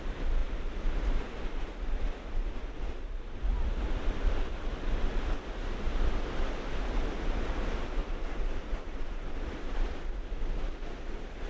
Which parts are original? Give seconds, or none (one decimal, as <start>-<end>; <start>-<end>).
0.0-8.0; 9.7-11.5